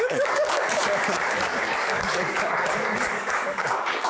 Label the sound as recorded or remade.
remade